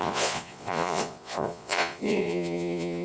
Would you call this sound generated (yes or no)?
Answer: yes